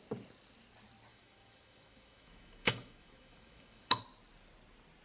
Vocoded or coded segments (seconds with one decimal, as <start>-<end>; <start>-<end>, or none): 1.1-4.0